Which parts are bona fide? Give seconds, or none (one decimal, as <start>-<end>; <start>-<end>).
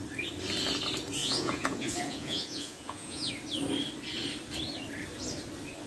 0.0-1.2; 3.3-5.9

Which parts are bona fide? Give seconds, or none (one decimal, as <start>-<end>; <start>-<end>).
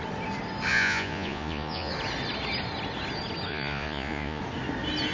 0.0-0.7; 1.9-3.5; 4.4-5.1